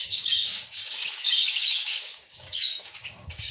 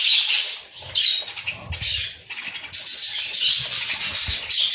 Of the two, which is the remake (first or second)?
first